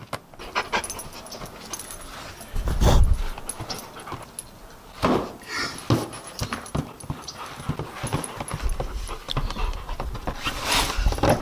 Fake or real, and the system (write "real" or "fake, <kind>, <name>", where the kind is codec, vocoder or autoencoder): real